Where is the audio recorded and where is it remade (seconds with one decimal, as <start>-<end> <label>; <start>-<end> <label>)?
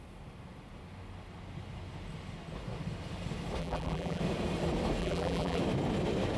0.0-3.6 recorded; 3.6-4.2 remade; 4.2-5.0 recorded; 5.0-5.6 remade; 5.6-6.4 recorded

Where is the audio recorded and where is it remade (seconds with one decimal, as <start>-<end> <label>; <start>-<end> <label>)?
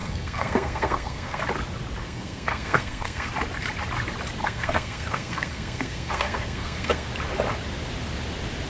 0.0-1.4 remade; 1.4-2.0 recorded; 2.0-3.3 remade; 3.3-4.4 recorded; 4.4-7.1 remade; 7.1-8.7 recorded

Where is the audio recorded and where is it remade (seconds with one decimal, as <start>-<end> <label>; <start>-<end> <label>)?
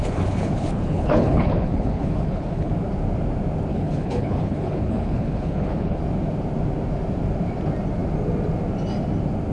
0.0-2.7 remade; 2.7-3.7 recorded; 3.7-6.0 remade; 6.0-9.5 recorded